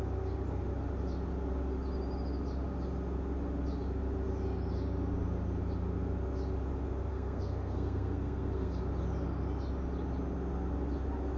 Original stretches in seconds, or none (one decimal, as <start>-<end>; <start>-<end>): 0.0-7.1; 8.8-11.4